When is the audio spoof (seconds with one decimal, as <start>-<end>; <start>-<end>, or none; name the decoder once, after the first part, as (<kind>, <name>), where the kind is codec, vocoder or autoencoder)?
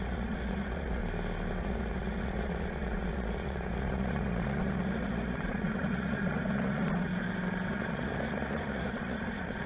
0.0-1.0 (vocoder, Vocos); 1.6-7.1; 7.7-9.7